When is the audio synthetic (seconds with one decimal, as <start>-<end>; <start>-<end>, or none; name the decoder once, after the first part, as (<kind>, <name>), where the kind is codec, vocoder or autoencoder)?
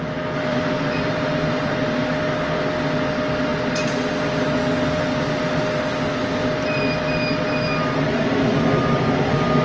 0.5-1.7 (vocoder, BigVGAN v2)